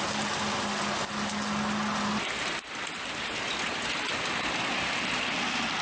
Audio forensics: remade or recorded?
recorded